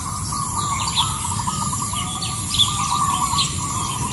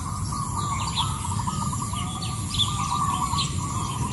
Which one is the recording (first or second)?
second